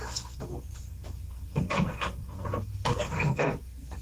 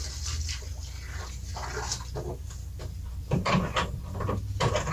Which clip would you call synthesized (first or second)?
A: first